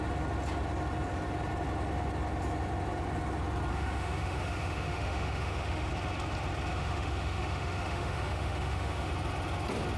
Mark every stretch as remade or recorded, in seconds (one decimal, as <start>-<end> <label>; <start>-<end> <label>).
0.0-3.7 recorded; 3.7-5.9 remade; 5.9-6.7 recorded; 6.7-9.1 remade; 9.1-10.0 recorded